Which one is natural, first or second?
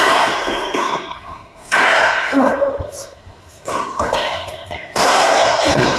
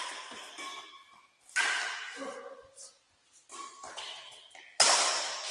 second